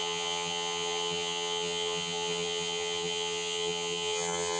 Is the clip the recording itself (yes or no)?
no